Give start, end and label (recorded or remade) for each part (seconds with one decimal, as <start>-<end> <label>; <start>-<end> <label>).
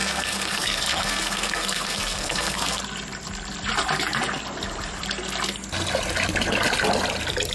0.0-2.8 remade; 2.8-7.5 recorded